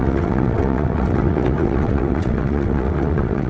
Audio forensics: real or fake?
fake